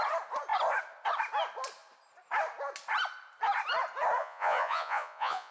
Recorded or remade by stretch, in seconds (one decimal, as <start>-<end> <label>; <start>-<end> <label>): 0.0-4.2 recorded; 4.2-5.5 remade